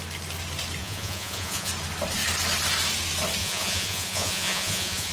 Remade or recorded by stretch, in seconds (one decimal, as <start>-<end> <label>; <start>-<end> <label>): 0.0-0.8 recorded; 0.8-1.7 remade; 1.7-3.4 recorded; 3.4-5.1 remade